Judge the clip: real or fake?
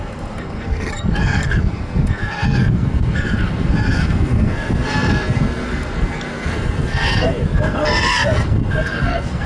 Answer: fake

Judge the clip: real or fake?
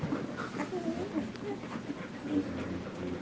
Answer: real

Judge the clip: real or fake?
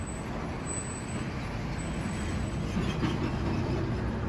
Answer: real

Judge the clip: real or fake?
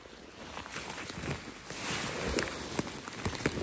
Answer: real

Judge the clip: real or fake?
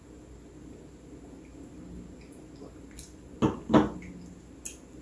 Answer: real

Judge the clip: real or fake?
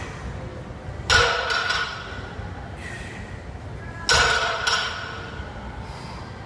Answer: real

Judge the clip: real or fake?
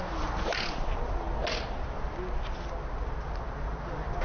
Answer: real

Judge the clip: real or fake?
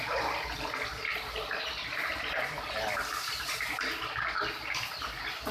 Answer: real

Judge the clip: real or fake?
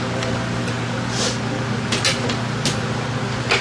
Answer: real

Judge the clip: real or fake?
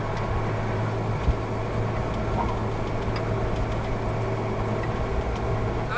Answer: real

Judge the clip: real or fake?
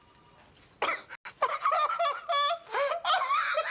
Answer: real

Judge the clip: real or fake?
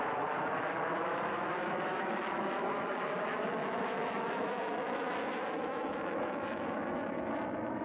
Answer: fake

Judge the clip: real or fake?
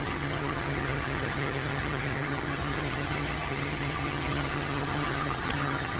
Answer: fake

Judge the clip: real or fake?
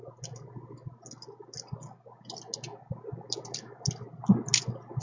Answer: real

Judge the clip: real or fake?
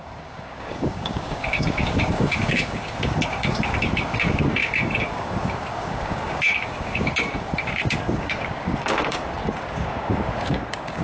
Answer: fake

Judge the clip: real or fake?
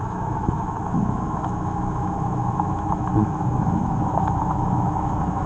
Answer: fake